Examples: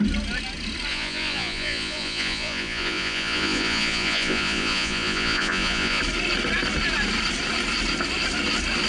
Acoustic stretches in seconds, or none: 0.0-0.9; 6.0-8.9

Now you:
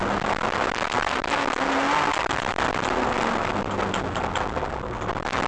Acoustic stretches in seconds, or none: 0.0-5.5

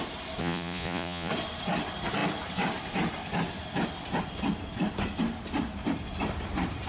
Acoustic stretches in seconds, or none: 0.0-0.4; 1.3-6.9

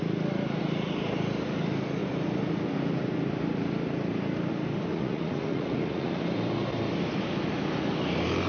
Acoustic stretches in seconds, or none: 0.0-4.9; 6.2-8.5

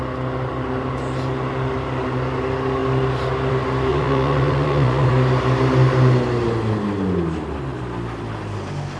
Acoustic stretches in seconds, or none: 0.0-3.9; 5.1-9.0